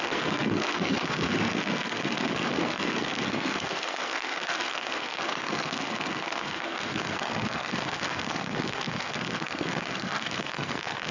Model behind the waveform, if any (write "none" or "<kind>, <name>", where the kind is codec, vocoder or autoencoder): codec, SNAC